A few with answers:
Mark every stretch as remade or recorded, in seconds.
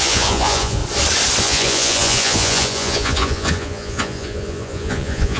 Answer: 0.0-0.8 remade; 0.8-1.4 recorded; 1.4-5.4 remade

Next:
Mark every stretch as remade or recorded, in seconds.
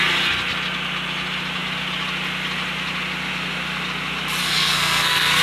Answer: 0.0-4.4 recorded; 4.4-5.4 remade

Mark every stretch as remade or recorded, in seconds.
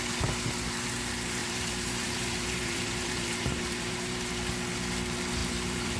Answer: 0.0-1.4 recorded; 1.4-4.3 remade; 4.3-5.4 recorded; 5.4-6.0 remade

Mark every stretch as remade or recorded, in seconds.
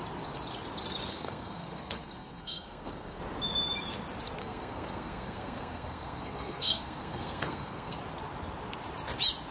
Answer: 0.0-1.1 recorded; 1.1-3.2 remade; 3.2-4.4 recorded; 4.4-8.0 remade; 8.0-9.5 recorded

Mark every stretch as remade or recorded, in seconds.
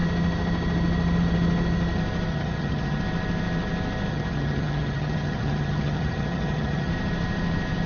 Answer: 0.0-2.3 recorded; 2.3-3.0 remade; 3.0-4.1 recorded; 4.1-6.9 remade; 6.9-7.9 recorded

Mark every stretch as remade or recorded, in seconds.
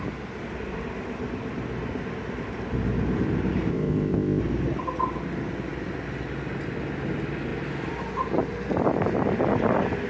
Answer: 0.0-3.7 recorded; 3.7-4.4 remade; 4.4-10.1 recorded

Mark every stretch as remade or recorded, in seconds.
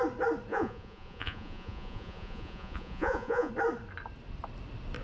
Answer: 0.0-0.5 recorded; 0.5-3.5 remade; 3.5-5.0 recorded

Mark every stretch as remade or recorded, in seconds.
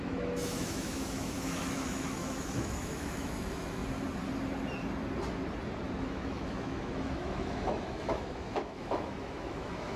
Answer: 0.0-3.8 remade; 3.8-6.0 recorded; 6.0-10.0 remade